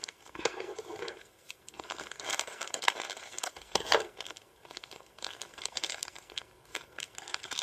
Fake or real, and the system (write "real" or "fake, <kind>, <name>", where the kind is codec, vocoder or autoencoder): fake, codec, SNAC